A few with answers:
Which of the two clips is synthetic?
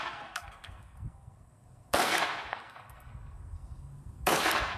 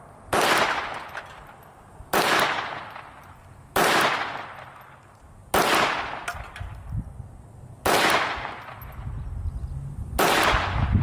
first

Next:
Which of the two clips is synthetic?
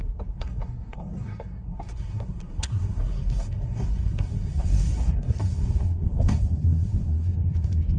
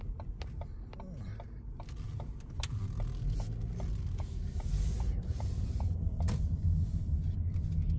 first